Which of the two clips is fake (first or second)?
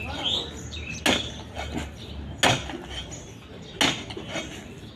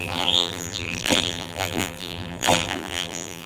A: second